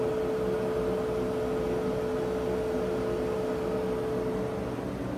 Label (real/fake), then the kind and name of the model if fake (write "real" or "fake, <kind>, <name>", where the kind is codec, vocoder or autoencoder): real